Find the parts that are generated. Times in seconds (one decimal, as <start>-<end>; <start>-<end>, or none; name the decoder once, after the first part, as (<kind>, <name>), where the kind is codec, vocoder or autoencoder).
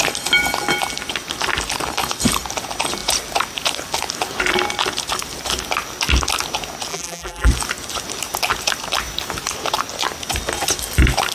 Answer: 6.9-7.5 (vocoder, BigVGAN v2)